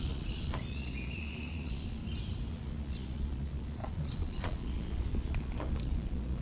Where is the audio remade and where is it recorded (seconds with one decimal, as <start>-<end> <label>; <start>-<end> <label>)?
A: 0.0-2.0 remade; 2.0-2.5 recorded; 2.5-6.4 remade